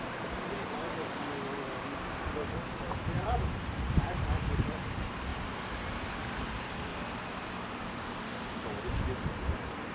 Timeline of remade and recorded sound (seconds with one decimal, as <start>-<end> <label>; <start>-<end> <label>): 0.0-5.3 remade; 5.3-6.0 recorded; 6.0-6.9 remade; 6.9-8.4 recorded; 8.4-9.9 remade